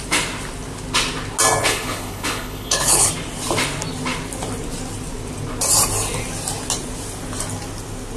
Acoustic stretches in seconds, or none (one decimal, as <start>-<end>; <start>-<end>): 0.0-1.6; 3.1-8.2